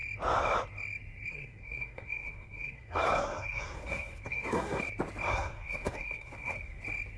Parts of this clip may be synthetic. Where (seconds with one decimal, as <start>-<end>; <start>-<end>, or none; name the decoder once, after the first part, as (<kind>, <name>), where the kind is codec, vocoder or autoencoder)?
1.3-4.8 (codec, SNAC); 5.3-6.8